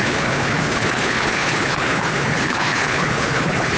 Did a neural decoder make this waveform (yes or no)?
yes